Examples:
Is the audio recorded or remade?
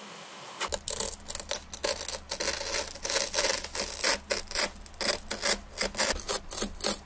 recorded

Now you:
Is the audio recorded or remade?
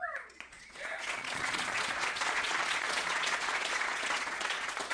remade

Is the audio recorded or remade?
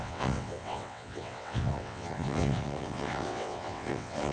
remade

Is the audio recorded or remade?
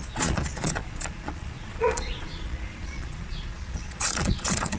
remade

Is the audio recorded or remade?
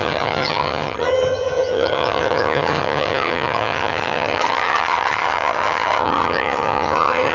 remade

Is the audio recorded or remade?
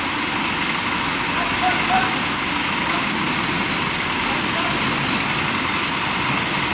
recorded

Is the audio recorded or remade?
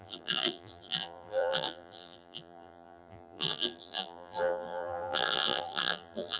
remade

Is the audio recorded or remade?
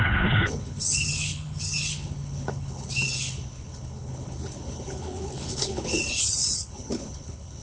remade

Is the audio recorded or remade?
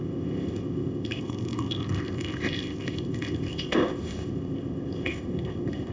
remade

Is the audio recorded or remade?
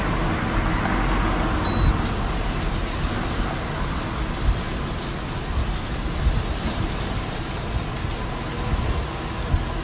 recorded